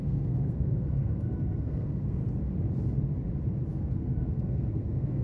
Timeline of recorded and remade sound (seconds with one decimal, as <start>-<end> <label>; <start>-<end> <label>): 0.0-2.2 remade; 2.2-3.7 recorded; 3.7-5.2 remade